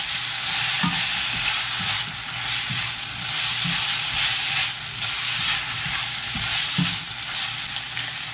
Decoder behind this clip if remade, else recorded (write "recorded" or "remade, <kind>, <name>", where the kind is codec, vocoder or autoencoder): recorded